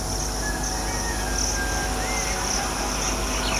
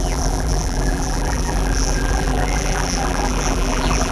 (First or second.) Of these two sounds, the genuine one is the first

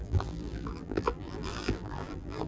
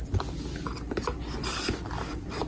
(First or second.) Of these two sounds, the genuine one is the second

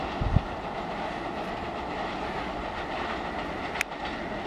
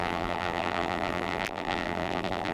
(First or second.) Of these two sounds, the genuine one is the first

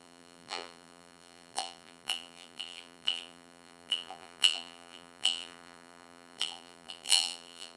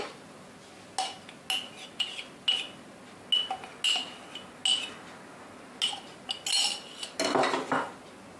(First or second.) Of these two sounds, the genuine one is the second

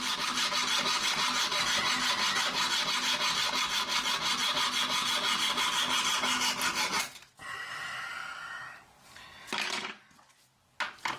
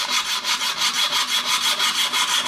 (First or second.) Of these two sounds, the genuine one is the first